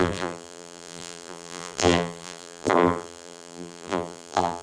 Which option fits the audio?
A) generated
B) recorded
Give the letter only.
A